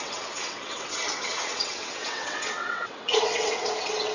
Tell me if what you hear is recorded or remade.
remade